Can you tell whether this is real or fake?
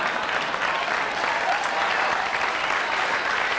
real